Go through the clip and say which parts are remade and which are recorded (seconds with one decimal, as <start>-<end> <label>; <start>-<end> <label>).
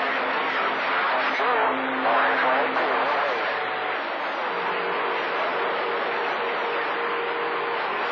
0.0-8.1 recorded